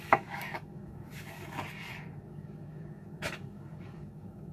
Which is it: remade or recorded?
remade